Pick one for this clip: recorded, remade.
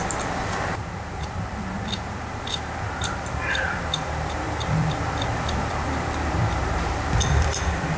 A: remade